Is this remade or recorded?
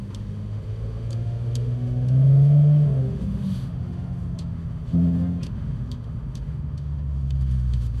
remade